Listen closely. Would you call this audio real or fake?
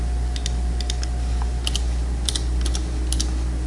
real